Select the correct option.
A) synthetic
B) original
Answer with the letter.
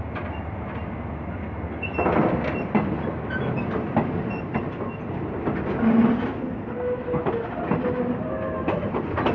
B